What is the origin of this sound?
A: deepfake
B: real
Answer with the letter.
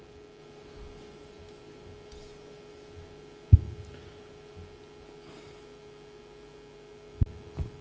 B